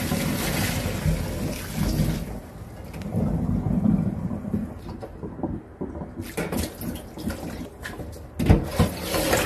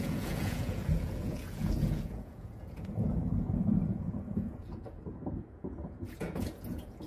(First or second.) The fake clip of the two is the second